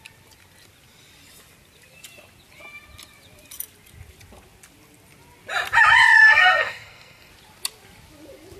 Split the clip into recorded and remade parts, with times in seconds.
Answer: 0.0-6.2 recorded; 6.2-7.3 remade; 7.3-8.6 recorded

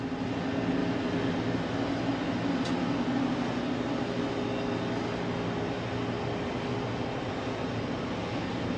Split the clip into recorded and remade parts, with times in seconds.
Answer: 0.0-8.8 recorded

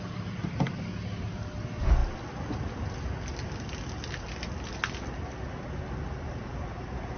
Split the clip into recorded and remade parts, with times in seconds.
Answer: 0.0-7.2 recorded